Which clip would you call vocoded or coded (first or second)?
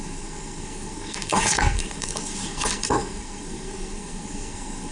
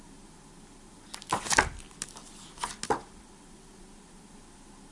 first